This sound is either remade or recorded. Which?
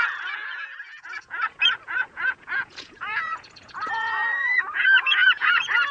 remade